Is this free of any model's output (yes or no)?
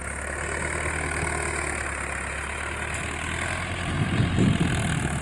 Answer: yes